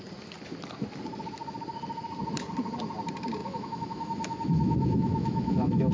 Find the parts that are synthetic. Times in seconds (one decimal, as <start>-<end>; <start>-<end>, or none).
3.4-5.9